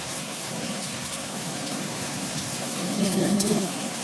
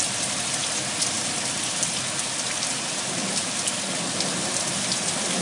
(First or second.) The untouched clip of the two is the second